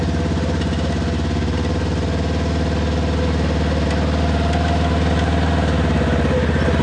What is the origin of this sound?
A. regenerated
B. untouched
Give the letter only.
B